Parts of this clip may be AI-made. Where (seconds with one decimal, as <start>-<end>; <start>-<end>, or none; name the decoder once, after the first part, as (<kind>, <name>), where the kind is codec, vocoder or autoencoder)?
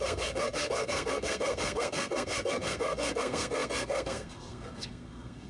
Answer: 0.0-5.5 (codec, SNAC)